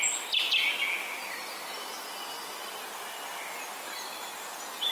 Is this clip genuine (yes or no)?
yes